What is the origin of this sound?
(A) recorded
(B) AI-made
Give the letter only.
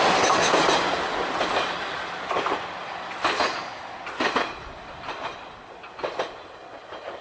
A